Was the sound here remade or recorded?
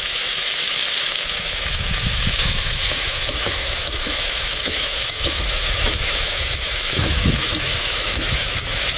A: remade